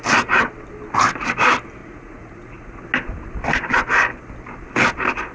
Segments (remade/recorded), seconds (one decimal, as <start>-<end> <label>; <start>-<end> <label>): 0.0-1.8 recorded; 1.8-2.8 remade; 2.8-5.3 recorded